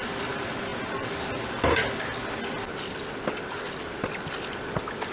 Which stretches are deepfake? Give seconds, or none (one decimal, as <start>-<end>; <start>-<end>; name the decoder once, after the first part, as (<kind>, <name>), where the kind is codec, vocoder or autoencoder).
0.0-0.7 (vocoder, BigVGAN v2); 3.8-5.1